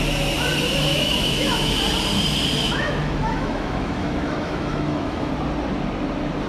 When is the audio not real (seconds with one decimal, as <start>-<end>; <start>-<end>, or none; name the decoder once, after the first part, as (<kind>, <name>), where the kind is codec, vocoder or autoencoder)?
0.9-1.7 (autoencoder, DAC-VAE); 2.6-5.3